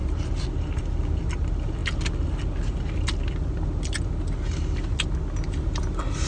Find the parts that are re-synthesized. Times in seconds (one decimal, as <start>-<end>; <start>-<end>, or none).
none